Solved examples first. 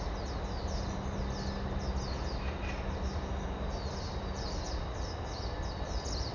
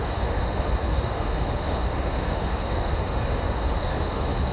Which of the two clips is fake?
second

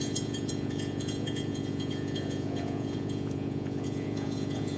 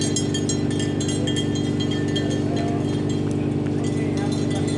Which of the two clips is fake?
first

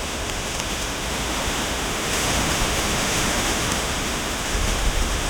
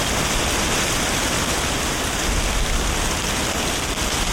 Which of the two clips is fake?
first